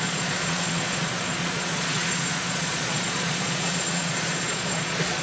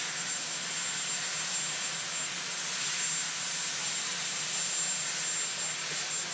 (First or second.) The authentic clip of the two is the second